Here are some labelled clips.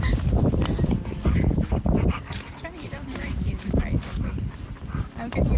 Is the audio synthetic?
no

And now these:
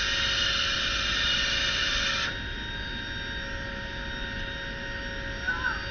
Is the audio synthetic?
no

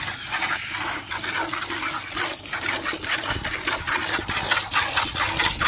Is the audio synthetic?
no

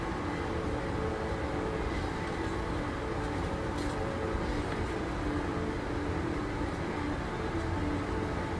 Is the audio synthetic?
no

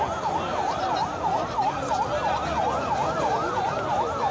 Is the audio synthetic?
no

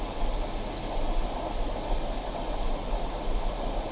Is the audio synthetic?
no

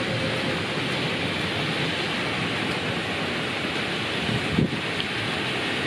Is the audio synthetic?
no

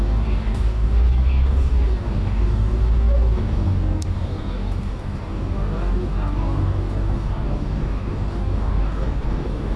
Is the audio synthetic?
yes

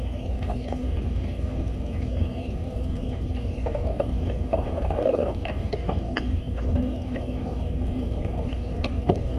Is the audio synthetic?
yes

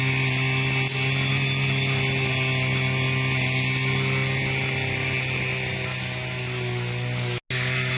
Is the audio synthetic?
no